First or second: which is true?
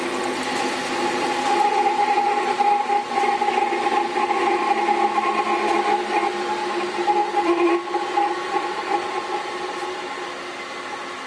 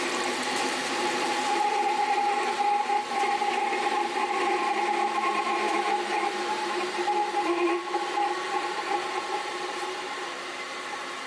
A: first